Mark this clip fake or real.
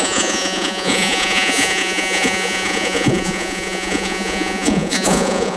fake